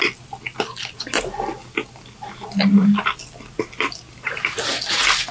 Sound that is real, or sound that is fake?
real